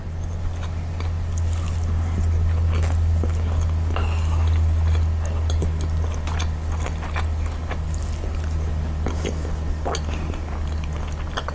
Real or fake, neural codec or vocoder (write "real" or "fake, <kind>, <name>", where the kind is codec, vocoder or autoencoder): real